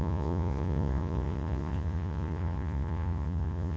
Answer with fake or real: fake